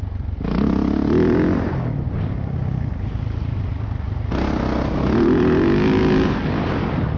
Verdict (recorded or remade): recorded